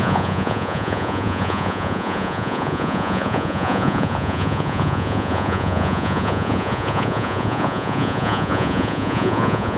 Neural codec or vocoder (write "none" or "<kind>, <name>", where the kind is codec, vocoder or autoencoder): vocoder, Vocos